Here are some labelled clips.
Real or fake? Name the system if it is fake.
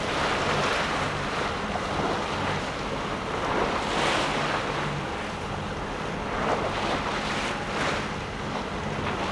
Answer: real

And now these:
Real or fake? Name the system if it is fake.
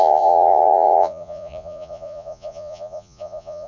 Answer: fake, vocoder, Vocos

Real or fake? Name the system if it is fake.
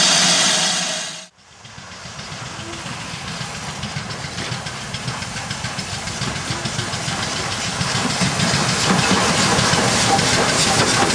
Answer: real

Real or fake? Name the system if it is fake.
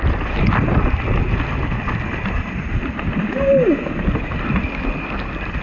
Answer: real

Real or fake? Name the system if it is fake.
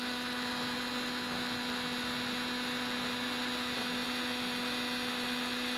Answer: real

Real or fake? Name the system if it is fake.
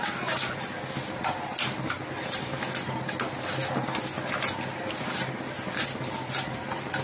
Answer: real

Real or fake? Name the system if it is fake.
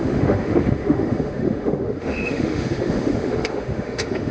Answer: fake, autoencoder, DAC-VAE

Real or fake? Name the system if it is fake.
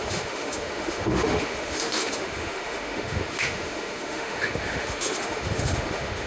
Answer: fake, autoencoder, DAC-VAE